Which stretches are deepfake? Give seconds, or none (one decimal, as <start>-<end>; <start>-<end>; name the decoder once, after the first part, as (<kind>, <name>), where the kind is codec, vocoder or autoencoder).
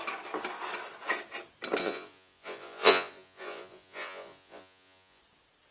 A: 1.8-5.2 (vocoder, Vocos)